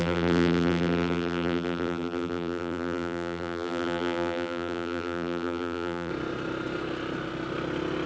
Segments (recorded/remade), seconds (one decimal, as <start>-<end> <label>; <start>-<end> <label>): 0.0-6.1 remade; 6.1-8.1 recorded